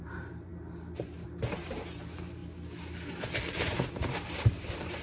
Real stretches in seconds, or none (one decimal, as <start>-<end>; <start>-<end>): 0.5-1.5; 2.4-3.5